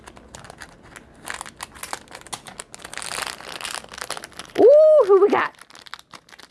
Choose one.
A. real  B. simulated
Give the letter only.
A